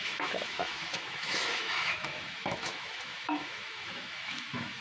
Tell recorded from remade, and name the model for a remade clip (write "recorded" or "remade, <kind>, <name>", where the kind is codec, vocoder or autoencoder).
remade, autoencoder, DAC-VAE